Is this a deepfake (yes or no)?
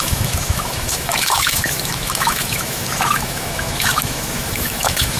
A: yes